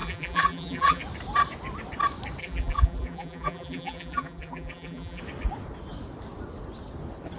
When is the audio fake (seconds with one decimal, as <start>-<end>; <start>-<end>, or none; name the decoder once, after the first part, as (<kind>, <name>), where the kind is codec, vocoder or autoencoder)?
0.0-1.0 (vocoder, BigVGAN v2); 2.4-5.2